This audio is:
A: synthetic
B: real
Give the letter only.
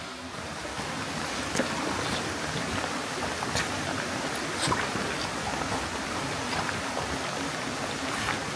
B